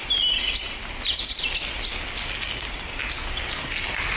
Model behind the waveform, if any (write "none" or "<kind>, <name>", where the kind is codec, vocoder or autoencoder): none